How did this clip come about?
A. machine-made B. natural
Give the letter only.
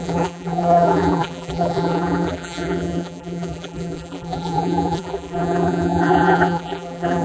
A